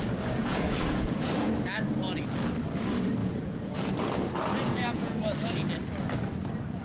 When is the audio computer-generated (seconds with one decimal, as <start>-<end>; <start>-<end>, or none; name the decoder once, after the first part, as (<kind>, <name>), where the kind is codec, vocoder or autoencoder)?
0.4-1.3 (vocoder, Vocos); 3.2-3.9; 4.5-5.2

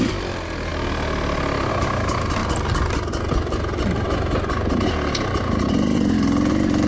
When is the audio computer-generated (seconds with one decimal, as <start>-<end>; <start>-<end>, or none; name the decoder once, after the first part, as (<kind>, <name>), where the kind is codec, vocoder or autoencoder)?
none

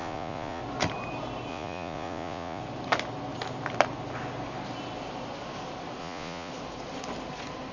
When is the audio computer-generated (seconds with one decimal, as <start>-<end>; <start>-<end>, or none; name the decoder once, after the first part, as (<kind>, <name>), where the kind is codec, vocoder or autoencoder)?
0.0-0.6 (vocoder, Vocos); 1.5-2.6; 6.0-6.5

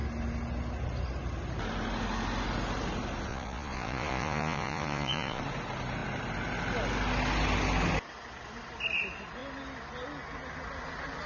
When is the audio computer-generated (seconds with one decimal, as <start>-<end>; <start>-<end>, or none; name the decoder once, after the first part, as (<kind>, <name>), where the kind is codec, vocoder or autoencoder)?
3.3-5.4 (vocoder, Vocos)

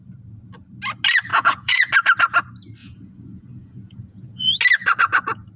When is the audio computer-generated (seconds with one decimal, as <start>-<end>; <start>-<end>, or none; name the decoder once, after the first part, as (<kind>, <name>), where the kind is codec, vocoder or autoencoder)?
1.3-1.9 (vocoder, Vocos); 2.8-4.6

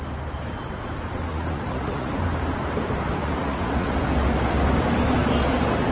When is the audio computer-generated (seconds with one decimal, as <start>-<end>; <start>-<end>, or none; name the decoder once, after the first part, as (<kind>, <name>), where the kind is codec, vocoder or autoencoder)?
1.3-2.1 (vocoder, Vocos); 3.2-4.0

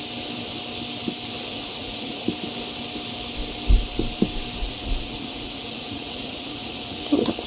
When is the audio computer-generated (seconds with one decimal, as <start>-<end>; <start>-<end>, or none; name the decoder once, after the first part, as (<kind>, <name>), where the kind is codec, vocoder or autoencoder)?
1.5-2.2 (vocoder, Vocos); 4.6-7.0